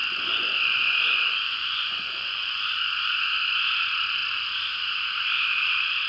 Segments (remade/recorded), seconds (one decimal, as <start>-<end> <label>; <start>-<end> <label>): 0.0-3.3 remade; 3.3-6.1 recorded